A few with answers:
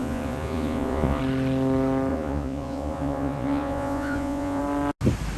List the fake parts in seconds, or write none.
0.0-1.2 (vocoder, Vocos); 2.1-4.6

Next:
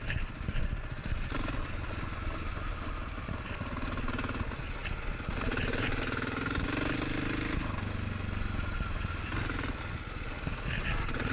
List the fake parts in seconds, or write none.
none

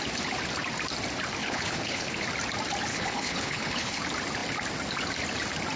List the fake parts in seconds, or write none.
1.4-2.2 (codec, HILCodec); 2.9-4.0

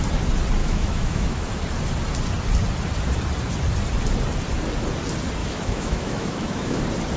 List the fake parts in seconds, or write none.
0.6-1.5 (autoencoder, DAC-VAE); 5.4-6.8

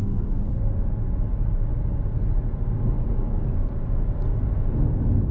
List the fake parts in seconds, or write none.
0.0-0.5 (autoencoder, DAC-VAE)